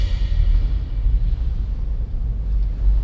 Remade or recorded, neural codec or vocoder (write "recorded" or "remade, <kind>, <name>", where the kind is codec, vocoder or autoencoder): recorded